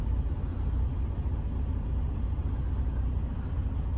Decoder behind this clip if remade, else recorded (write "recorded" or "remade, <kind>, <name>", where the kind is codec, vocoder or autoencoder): recorded